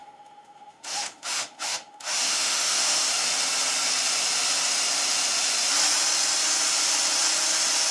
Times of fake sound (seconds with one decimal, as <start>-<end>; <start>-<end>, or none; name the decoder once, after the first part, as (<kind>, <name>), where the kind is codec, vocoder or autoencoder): 0.0-3.1 (autoencoder, DAC-VAE)